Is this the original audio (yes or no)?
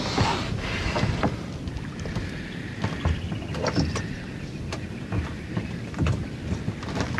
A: yes